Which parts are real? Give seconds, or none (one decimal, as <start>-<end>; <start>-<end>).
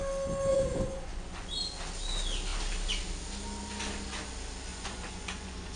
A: 0.0-0.5; 1.5-4.7